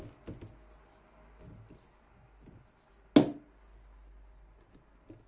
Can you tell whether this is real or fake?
real